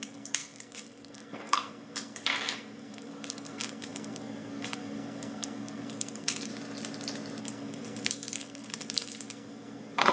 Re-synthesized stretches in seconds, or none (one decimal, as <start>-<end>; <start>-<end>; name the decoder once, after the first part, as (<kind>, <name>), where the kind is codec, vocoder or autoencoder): 0.0-6.5 (codec, SNAC); 7.4-10.1

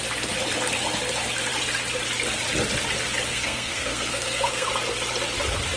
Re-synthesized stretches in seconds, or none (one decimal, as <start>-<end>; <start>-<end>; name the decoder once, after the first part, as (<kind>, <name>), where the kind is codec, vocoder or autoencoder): 3.3-4.7 (codec, SNAC)

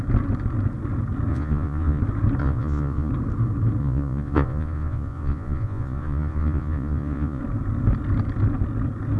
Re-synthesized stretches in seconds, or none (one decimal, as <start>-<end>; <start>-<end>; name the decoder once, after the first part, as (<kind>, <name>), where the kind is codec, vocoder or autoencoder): 1.3-2.0 (vocoder, Vocos); 2.4-3.1; 3.8-7.4

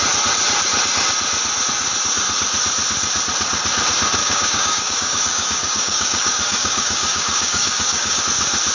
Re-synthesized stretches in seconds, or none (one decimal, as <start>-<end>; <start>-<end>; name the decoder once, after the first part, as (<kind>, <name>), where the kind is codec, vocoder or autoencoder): 4.2-8.2 (codec, DAC)

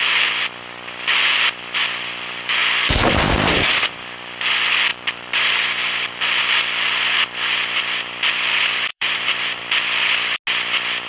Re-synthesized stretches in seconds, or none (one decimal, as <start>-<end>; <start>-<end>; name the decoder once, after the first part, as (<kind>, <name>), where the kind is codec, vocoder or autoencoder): 4.9-6.4 (vocoder, BigVGAN v2); 8.9-9.6

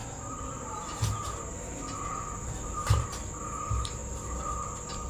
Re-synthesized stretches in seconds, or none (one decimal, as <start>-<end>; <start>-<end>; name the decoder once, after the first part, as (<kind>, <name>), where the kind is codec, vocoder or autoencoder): 0.0-3.1 (vocoder, BigVGAN v2)